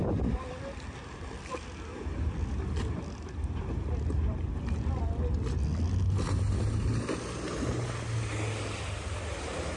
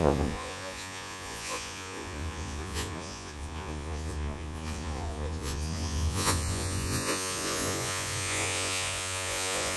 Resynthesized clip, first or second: second